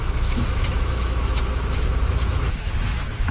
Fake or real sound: fake